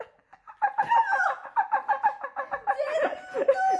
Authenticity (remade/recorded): recorded